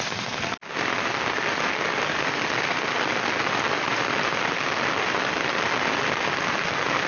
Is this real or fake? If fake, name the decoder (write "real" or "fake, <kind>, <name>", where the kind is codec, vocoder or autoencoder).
real